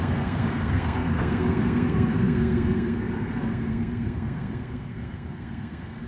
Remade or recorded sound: remade